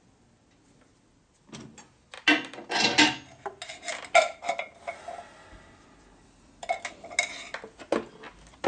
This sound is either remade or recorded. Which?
recorded